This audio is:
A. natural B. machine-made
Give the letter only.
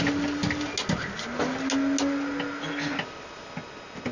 A